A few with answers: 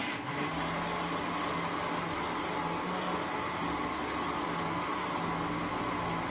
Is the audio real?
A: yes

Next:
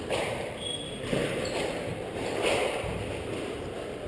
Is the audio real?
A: yes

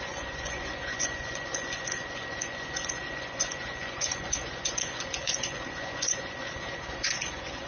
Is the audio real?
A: no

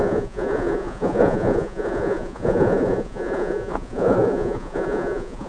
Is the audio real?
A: no